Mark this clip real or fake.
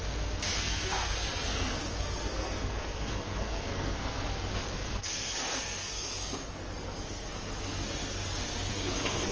fake